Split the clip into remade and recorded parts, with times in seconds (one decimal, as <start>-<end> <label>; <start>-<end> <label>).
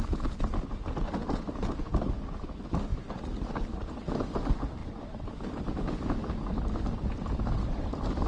0.0-2.9 recorded; 2.9-3.5 remade; 3.5-4.8 recorded; 4.8-7.3 remade; 7.3-8.3 recorded